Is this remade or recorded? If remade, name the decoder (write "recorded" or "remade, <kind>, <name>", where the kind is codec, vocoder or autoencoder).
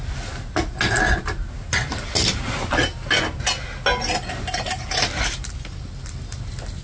recorded